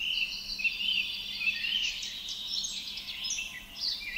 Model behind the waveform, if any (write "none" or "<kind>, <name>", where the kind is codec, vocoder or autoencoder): none